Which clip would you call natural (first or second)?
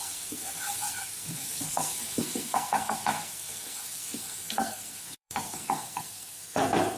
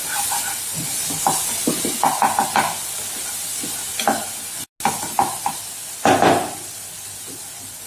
second